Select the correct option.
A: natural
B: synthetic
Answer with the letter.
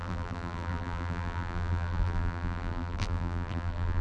B